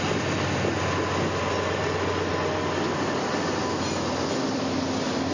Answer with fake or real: real